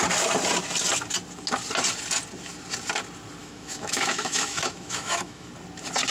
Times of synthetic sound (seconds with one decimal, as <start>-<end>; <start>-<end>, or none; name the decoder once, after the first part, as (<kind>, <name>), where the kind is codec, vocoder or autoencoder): 3.4-5.5 (autoencoder, DAC-VAE)